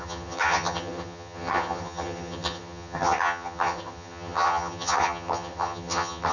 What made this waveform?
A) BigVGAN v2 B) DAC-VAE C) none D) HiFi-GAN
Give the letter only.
D